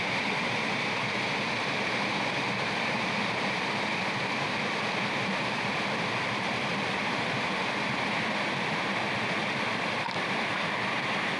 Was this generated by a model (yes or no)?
yes